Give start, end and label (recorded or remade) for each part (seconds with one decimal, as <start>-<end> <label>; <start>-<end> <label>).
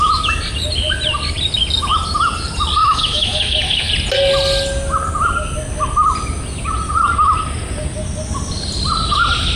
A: 0.0-2.8 recorded; 2.8-3.9 remade; 3.9-9.6 recorded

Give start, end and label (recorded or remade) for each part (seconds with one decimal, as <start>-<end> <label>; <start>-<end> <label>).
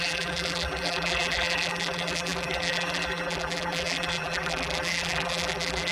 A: 0.0-5.9 remade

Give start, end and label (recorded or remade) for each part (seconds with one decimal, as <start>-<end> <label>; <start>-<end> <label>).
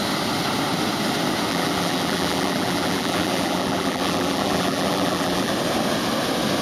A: 0.0-1.5 recorded; 1.5-5.5 remade; 5.5-6.6 recorded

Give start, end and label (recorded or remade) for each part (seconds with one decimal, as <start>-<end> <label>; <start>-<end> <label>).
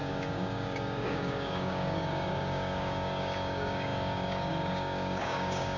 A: 0.0-5.8 remade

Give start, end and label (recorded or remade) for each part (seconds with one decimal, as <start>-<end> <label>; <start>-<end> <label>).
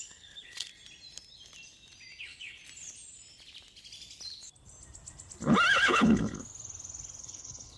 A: 0.0-0.7 remade; 0.7-2.2 recorded; 2.2-2.6 remade; 2.6-5.7 recorded; 5.7-6.4 remade; 6.4-7.2 recorded; 7.2-7.8 remade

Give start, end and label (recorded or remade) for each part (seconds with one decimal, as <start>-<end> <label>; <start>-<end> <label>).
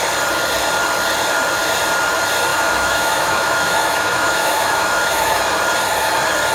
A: 0.0-2.5 recorded; 2.5-5.4 remade; 5.4-6.5 recorded